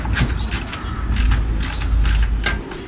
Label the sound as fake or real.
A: real